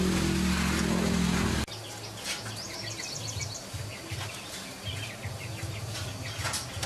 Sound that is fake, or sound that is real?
real